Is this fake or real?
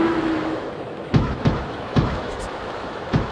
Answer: fake